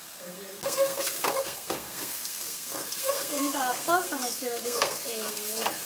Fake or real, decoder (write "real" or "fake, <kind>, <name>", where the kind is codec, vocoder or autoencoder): fake, codec, SNAC